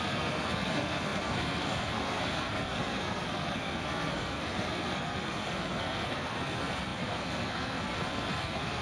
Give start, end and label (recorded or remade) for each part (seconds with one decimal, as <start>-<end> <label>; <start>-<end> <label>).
0.0-8.8 remade